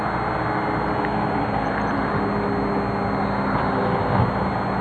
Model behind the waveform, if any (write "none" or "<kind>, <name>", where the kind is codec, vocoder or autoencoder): none